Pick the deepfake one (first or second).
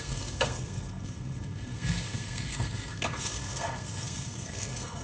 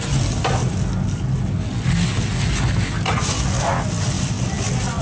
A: first